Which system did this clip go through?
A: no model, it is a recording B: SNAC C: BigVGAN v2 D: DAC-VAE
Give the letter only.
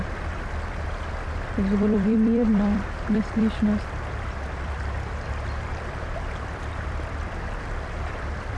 C